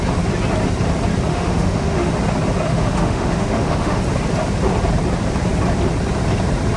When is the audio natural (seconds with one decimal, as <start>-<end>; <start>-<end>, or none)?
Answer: 0.0-1.3; 2.1-2.7; 4.0-6.8